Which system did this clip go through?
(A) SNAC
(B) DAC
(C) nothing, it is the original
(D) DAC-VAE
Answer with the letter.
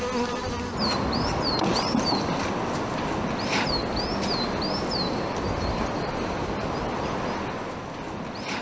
C